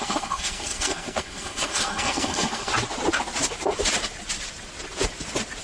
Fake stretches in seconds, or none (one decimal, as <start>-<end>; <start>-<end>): 0.0-2.7